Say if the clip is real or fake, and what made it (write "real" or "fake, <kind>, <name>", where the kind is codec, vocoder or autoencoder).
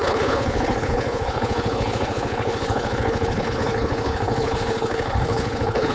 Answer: fake, codec, HILCodec